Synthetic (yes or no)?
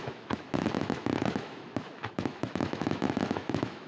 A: yes